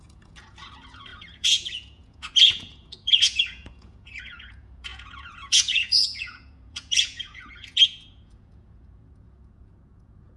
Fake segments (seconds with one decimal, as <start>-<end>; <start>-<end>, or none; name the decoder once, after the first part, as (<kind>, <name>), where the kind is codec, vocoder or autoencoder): 0.0-10.4 (vocoder, Vocos)